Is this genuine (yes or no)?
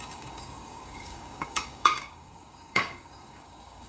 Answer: no